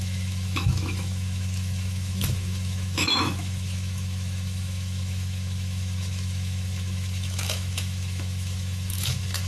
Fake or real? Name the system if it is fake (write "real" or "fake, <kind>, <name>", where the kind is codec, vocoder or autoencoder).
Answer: fake, autoencoder, DAC-VAE